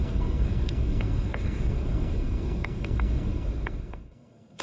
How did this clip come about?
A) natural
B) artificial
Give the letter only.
B